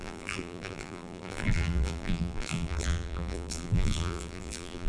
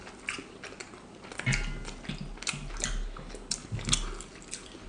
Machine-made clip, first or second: first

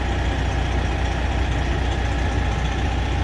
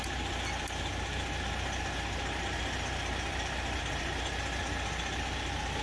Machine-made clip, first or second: second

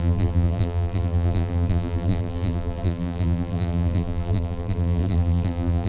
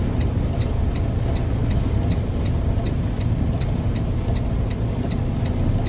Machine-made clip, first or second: first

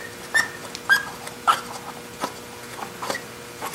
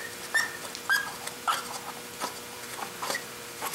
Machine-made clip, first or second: second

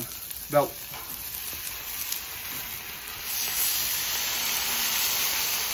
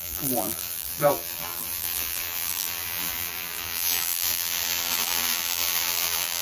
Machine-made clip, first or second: second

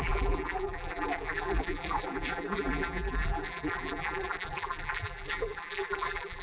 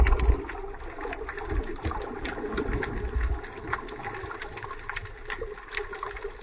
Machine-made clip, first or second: first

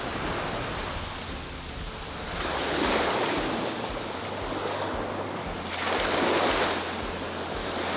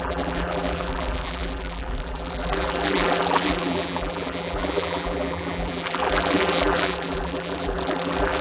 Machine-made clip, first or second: second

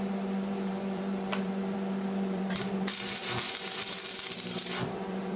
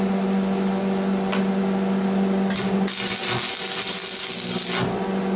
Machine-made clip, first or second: first